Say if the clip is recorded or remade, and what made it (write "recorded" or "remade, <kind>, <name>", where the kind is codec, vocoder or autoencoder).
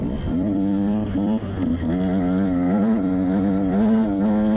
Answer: remade, vocoder, BigVGAN v2